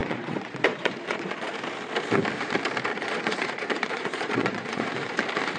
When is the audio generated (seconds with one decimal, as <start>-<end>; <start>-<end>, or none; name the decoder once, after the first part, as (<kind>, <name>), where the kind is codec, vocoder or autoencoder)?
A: 0.0-1.5 (vocoder, Vocos); 2.9-4.9